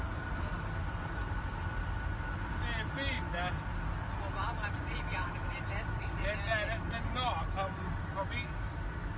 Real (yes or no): yes